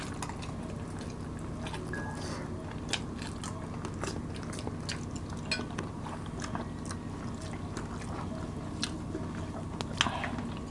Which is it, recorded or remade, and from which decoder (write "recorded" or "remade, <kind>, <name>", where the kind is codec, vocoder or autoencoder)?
recorded